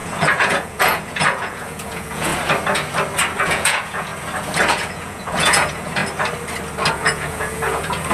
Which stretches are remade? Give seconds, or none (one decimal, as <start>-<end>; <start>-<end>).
0.0-2.3; 3.4-4.1; 4.7-6.0; 6.9-8.1